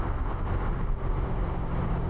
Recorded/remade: recorded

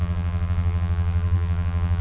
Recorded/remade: remade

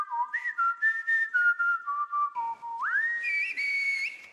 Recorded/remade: recorded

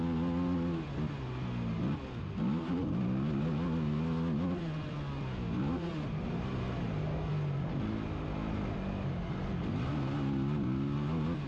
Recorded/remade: recorded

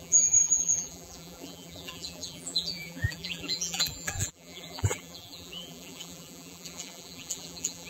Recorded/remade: remade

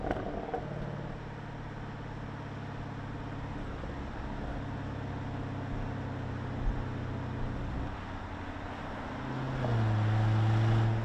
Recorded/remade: recorded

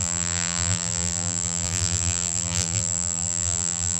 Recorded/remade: remade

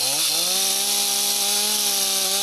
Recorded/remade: recorded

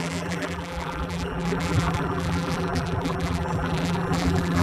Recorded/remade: remade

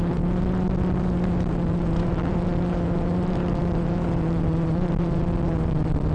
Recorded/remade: remade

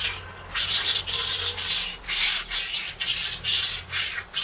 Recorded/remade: recorded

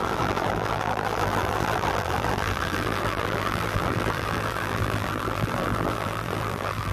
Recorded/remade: remade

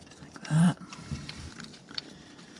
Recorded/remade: remade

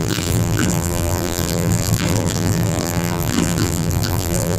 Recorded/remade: remade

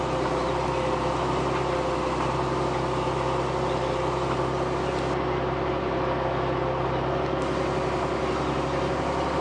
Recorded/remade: recorded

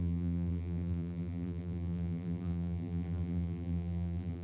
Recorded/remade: remade